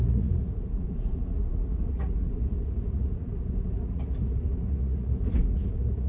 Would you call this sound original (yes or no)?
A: no